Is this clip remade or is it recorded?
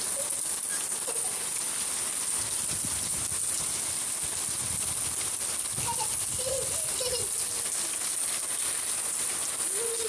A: recorded